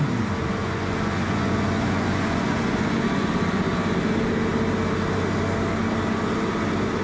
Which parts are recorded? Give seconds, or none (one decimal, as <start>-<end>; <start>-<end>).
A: 0.0-0.6; 3.3-7.0